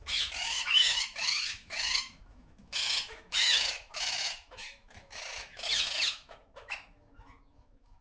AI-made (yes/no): yes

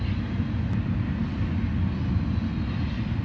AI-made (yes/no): no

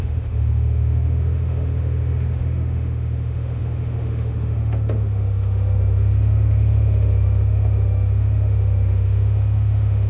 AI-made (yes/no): yes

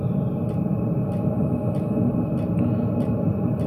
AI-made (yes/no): no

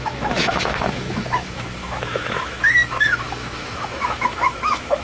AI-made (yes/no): yes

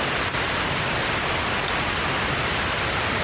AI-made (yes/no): no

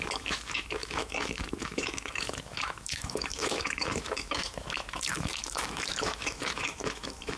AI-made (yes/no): yes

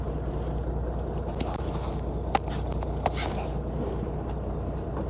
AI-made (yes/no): no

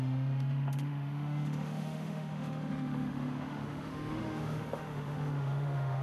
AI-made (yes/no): yes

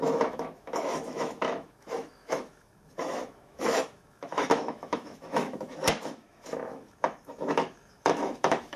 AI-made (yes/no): yes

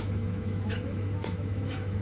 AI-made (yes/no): yes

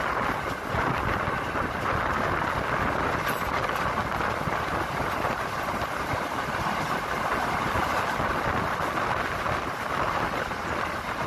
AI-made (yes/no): no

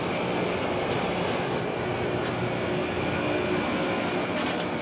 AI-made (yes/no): no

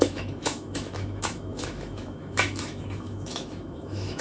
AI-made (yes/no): yes